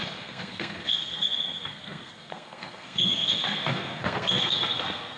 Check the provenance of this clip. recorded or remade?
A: remade